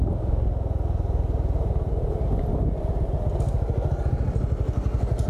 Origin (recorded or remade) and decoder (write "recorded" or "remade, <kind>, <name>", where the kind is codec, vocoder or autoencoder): recorded